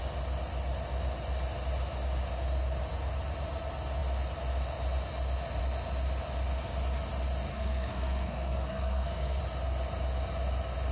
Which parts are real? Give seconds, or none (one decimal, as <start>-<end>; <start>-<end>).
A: 0.0-7.5; 9.4-10.9